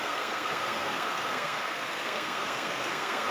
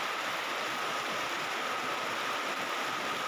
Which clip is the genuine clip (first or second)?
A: second